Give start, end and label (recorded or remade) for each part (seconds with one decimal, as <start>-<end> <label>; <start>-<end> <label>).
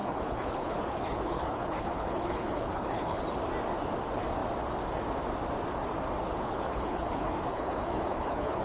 0.0-3.2 remade; 3.2-6.2 recorded; 6.2-8.6 remade